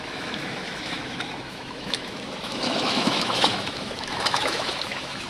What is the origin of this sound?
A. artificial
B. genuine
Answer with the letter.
A